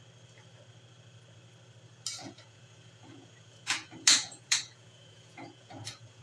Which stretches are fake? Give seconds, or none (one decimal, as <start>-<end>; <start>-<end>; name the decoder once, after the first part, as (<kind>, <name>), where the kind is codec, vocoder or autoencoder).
2.2-6.2 (vocoder, Vocos)